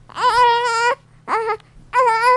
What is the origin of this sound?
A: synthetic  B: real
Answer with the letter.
B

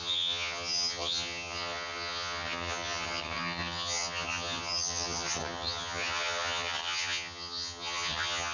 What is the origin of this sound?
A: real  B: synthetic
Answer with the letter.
B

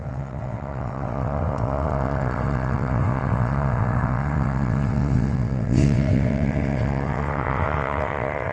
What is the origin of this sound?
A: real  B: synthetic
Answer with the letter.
B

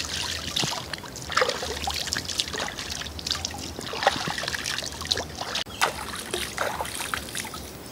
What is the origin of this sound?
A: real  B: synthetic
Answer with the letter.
A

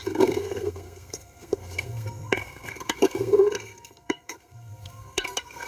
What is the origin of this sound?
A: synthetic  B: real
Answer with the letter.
A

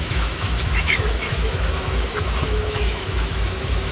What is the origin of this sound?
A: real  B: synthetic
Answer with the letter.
B